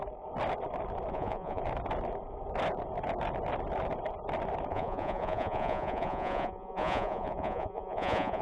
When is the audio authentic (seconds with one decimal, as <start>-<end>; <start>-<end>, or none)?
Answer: 0.0-1.1; 1.6-4.7